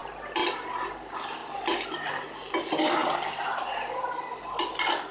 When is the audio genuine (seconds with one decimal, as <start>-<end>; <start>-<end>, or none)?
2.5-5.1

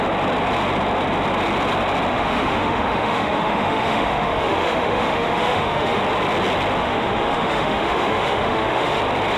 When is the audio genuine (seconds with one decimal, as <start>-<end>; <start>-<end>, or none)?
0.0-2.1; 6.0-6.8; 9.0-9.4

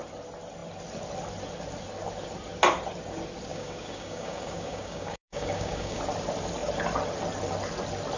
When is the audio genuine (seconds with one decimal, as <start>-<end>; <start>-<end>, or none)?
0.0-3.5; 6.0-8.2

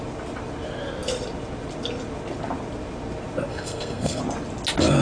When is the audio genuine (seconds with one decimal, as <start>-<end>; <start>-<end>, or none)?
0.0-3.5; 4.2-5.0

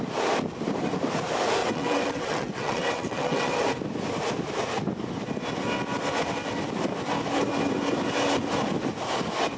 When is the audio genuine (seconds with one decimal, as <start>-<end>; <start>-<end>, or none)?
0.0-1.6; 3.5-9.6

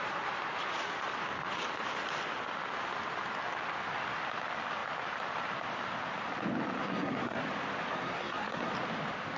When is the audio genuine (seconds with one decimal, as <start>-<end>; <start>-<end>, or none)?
0.0-6.8; 7.4-7.9; 8.7-9.4

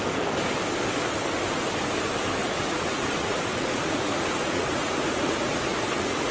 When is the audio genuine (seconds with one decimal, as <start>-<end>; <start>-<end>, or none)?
0.0-2.4